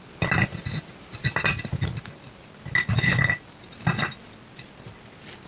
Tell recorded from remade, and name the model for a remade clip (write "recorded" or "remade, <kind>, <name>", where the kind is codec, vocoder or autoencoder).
recorded